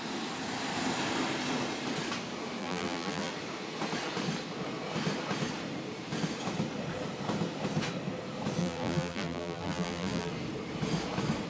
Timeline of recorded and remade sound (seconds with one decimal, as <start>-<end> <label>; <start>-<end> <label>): 0.0-2.6 recorded; 2.6-3.3 remade; 3.3-8.6 recorded; 8.6-10.3 remade; 10.3-11.5 recorded